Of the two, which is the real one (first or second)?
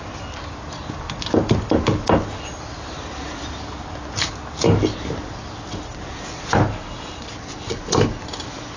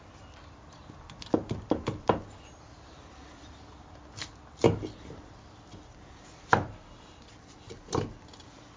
first